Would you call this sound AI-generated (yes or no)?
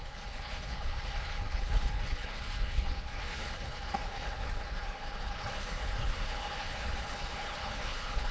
yes